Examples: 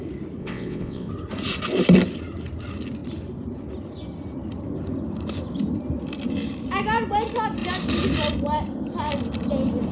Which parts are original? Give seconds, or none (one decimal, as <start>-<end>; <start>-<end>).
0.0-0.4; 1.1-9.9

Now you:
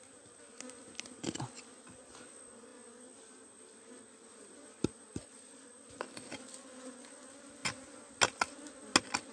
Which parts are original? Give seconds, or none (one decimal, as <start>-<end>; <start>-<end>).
0.0-9.3

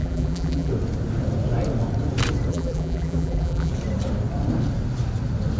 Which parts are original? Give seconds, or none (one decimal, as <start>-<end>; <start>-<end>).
0.7-2.5; 3.7-5.6

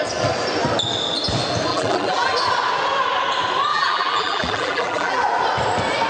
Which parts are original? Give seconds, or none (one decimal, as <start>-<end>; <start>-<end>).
0.0-1.7; 2.3-3.7; 5.2-6.1

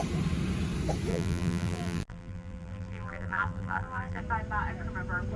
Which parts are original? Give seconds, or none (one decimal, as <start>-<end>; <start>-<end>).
0.0-1.1; 4.2-5.4

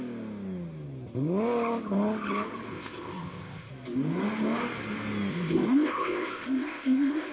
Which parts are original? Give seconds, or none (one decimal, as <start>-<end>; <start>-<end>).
0.0-2.7; 3.7-5.3

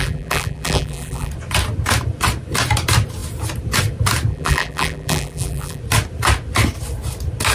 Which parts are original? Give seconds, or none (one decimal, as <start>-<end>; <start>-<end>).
1.3-4.3; 5.8-7.5

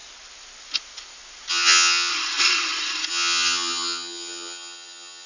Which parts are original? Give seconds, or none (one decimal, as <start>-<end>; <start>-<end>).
0.0-1.5; 2.1-3.1